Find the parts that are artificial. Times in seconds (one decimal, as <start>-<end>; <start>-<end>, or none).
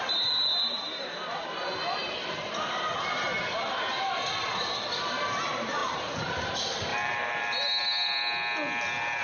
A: 2.0-2.5; 5.8-6.5; 6.9-7.7